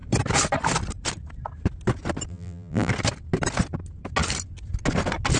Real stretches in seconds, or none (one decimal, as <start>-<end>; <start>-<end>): 0.0-2.3; 2.9-5.4